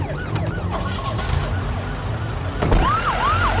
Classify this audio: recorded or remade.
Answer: recorded